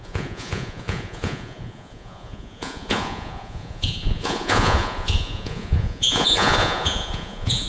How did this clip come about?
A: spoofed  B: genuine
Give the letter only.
A